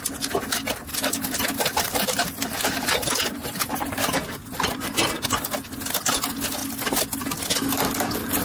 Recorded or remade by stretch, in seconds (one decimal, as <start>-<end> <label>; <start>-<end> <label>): 0.0-0.9 recorded; 0.9-5.1 remade; 5.1-8.4 recorded